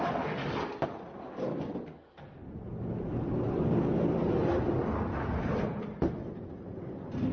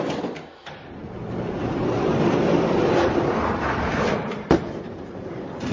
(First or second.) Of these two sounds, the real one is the first